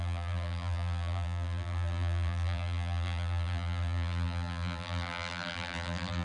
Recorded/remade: remade